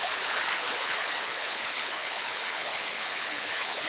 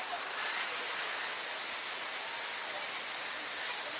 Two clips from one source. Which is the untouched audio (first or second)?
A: second